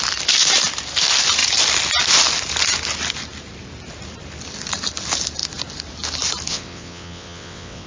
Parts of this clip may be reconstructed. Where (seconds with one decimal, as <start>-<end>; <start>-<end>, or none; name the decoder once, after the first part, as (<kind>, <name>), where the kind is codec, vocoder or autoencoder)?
6.5-7.9 (vocoder, WaveNeXt)